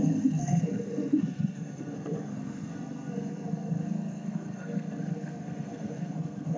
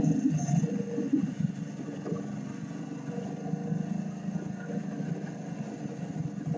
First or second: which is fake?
first